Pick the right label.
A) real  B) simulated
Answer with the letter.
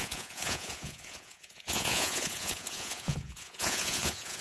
B